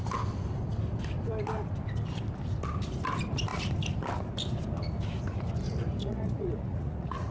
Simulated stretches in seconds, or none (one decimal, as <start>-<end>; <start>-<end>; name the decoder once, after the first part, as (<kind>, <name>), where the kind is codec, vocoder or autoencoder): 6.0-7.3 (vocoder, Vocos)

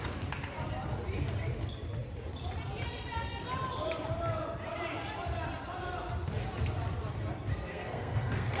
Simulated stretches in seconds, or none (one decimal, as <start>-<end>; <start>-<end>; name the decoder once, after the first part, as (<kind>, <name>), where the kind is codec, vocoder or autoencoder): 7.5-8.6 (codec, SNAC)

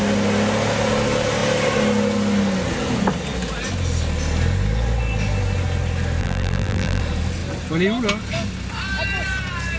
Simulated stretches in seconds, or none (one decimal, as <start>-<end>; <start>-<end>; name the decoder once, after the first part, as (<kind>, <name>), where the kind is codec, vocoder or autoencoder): 6.2-7.0 (vocoder, BigVGAN v2)